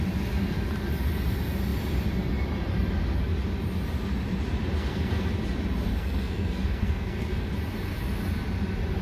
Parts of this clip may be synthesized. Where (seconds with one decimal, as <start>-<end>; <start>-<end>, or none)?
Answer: 4.8-5.3; 5.9-7.5

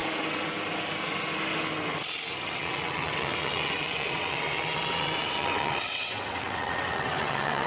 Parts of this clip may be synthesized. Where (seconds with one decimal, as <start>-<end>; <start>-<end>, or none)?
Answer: 2.4-7.7